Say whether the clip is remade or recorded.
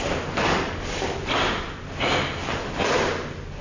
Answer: recorded